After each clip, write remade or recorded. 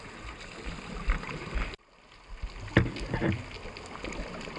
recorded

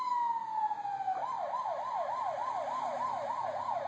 recorded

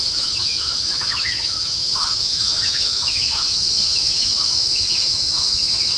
remade